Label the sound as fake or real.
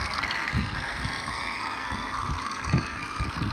fake